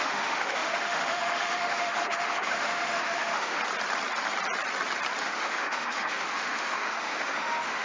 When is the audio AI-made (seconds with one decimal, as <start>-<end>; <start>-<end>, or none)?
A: 0.0-3.6; 5.2-7.8

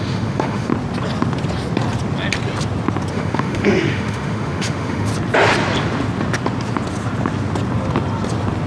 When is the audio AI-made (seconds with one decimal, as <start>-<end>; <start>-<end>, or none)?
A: 0.0-0.7; 3.1-5.1

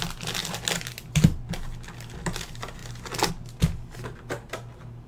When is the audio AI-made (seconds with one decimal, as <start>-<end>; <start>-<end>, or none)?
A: none

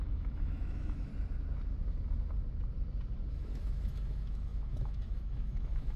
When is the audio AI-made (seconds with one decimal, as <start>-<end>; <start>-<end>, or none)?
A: 0.0-1.1; 3.3-6.0

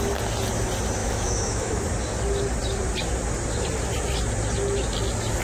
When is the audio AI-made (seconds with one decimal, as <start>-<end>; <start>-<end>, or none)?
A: 1.0-1.8

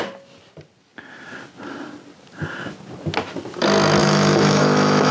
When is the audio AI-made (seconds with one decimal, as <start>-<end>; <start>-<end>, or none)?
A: 4.0-5.1

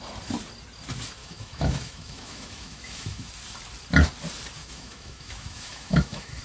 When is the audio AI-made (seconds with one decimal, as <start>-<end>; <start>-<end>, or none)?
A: 1.2-3.3; 4.6-6.4